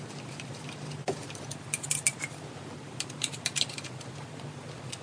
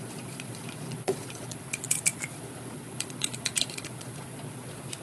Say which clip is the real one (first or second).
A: first